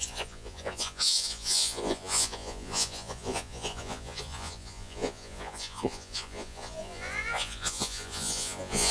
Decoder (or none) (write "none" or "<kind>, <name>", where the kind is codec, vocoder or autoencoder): vocoder, Vocos